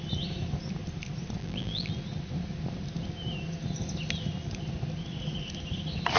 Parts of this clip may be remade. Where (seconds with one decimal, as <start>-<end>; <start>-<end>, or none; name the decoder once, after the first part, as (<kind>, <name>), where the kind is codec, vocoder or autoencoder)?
1.4-1.9 (vocoder, BigVGAN v2)